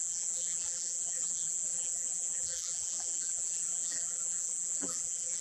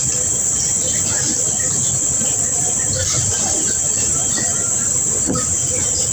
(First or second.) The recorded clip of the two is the second